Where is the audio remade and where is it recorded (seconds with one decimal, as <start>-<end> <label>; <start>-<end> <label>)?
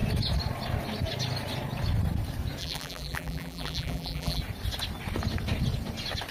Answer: 0.0-2.6 recorded; 2.6-4.4 remade; 4.4-6.3 recorded